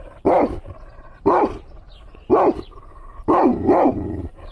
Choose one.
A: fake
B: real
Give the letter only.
A